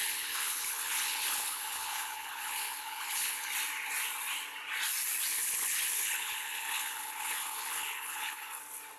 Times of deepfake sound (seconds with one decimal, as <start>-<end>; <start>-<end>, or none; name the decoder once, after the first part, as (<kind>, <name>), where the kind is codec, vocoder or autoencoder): 0.0-3.5 (codec, HILCodec); 5.3-8.6